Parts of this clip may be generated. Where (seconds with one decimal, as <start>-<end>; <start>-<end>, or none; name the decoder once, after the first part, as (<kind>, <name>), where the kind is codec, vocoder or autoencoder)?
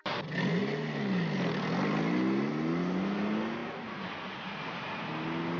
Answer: none